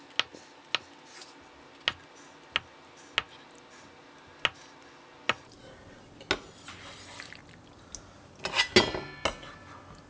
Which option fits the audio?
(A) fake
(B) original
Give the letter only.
B